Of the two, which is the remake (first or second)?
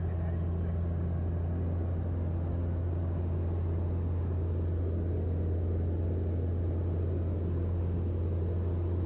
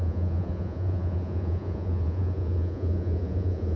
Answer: second